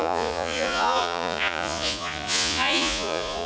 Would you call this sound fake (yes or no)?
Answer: yes